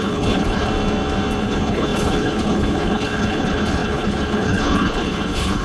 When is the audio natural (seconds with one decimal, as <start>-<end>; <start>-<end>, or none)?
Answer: 0.7-1.4